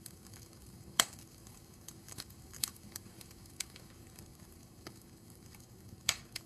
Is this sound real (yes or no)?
no